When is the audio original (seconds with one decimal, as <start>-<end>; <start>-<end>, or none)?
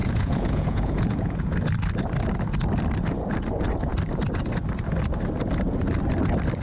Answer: 1.5-6.6